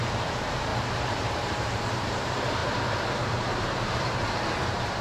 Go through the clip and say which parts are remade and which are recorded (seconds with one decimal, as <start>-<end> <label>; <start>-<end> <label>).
0.0-5.0 remade